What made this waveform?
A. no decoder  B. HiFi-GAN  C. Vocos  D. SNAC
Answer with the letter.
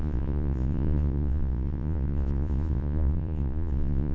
C